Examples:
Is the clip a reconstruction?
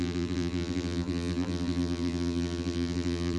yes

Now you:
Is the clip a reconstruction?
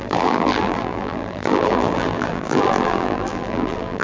yes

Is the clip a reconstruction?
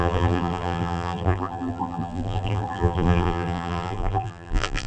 yes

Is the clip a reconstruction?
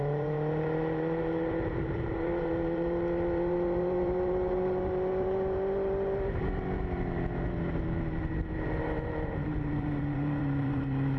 yes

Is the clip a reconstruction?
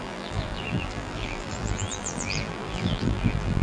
yes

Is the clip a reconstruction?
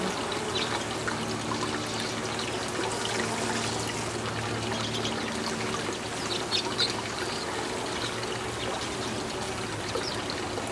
no